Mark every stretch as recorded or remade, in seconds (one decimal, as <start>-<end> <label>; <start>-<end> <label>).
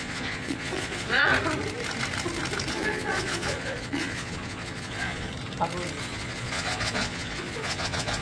0.0-1.3 remade; 1.3-2.7 recorded; 2.7-5.3 remade; 5.3-6.0 recorded; 6.0-8.2 remade